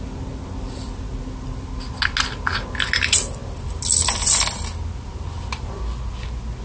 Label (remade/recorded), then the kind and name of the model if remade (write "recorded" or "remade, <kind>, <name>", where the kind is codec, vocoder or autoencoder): recorded